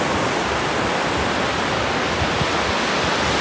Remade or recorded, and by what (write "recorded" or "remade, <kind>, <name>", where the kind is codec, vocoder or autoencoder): recorded